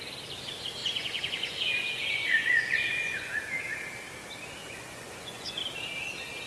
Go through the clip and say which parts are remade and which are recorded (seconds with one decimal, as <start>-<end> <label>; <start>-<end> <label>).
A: 0.0-0.8 recorded; 0.8-3.3 remade; 3.3-4.6 recorded; 4.6-5.6 remade; 5.6-6.5 recorded